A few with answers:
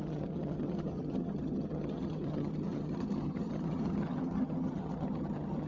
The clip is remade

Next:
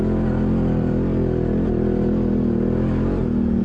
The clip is recorded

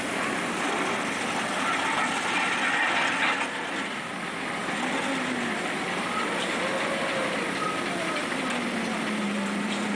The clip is recorded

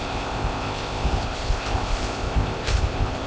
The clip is remade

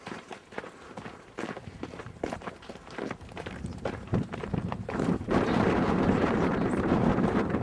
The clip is remade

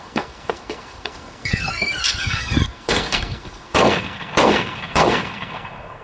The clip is remade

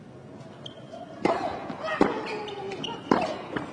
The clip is recorded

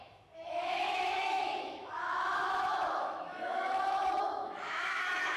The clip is remade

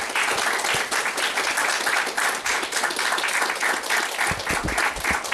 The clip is recorded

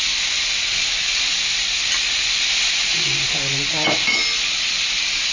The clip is recorded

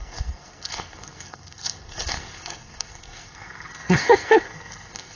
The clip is remade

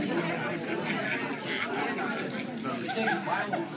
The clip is recorded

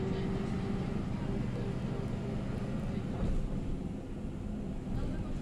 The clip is recorded